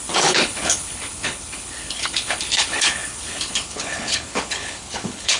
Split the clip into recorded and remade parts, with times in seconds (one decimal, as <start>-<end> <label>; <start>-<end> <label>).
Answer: 0.0-5.4 remade